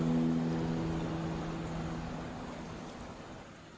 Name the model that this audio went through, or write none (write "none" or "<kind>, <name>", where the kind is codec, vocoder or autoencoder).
none